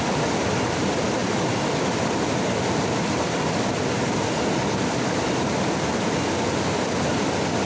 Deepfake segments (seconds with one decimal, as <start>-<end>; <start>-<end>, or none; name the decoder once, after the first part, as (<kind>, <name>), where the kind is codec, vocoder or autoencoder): 1.2-2.1 (vocoder, BigVGAN v2)